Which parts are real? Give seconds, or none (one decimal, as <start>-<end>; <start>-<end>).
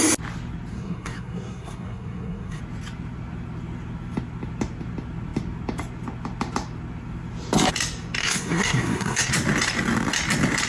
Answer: 0.0-0.7; 2.6-8.2; 9.3-10.7